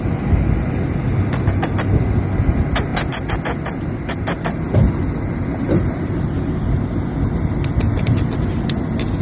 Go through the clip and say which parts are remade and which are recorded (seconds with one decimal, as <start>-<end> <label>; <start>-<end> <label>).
0.0-2.9 recorded; 2.9-4.6 remade; 4.6-9.2 recorded

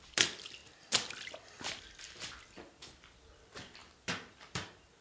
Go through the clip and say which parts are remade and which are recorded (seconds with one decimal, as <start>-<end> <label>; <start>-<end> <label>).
0.0-5.0 recorded

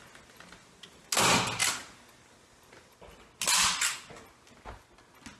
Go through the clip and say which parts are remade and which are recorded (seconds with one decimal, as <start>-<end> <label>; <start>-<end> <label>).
0.0-5.4 recorded

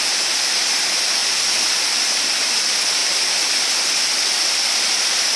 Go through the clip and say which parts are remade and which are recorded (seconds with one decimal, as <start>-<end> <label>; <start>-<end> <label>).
0.0-5.4 recorded